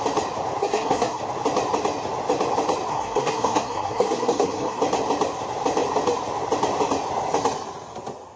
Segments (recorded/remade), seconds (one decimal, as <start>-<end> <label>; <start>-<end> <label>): 0.0-0.6 recorded; 0.6-1.2 remade; 1.2-2.9 recorded; 2.9-4.8 remade; 4.8-8.4 recorded